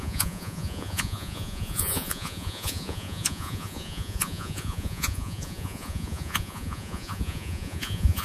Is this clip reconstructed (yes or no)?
yes